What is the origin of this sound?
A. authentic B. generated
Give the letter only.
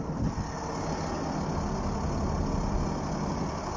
A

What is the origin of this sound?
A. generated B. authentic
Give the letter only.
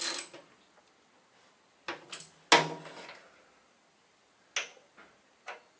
B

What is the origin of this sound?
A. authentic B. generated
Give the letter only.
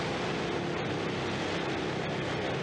A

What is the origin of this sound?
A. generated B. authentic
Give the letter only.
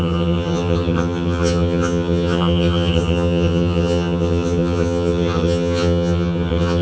A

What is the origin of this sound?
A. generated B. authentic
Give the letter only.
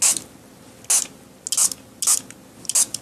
B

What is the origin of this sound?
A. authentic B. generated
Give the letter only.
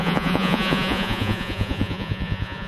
B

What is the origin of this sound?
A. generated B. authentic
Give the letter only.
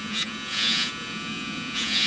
A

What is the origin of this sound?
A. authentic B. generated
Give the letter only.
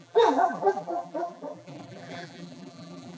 B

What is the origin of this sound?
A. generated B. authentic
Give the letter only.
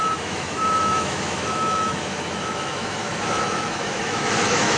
A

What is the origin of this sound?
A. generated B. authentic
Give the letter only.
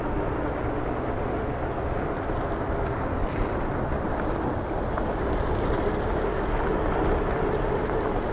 B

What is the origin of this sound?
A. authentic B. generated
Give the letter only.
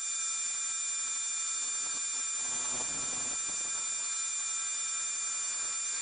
A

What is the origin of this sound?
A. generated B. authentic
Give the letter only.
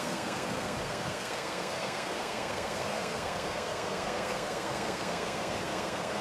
A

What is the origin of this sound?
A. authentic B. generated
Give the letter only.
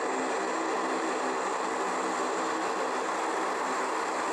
A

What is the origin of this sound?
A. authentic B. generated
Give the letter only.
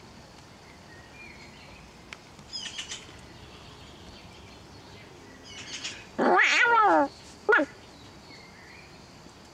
A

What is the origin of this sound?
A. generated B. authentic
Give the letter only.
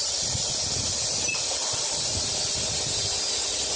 B